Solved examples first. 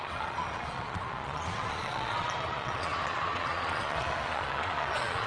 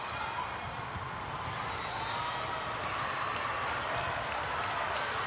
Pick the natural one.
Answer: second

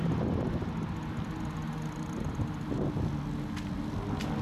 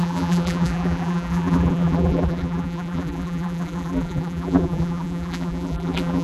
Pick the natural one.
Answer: first